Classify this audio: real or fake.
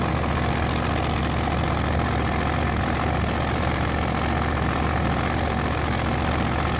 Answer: real